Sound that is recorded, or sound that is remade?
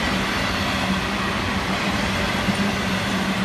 recorded